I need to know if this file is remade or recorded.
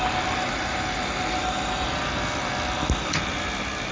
recorded